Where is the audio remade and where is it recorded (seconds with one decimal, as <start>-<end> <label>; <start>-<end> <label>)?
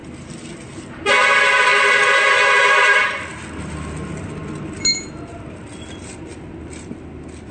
0.0-7.5 recorded